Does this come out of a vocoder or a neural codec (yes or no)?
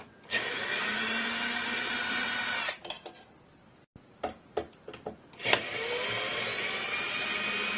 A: no